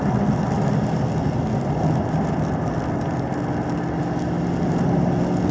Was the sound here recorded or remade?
recorded